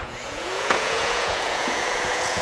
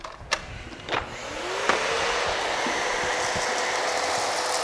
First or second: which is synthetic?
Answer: first